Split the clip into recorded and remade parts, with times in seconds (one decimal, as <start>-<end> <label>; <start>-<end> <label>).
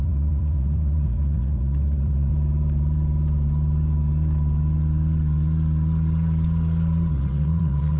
0.0-2.3 remade; 2.3-7.1 recorded; 7.1-8.0 remade